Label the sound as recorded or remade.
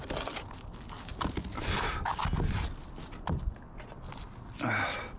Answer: recorded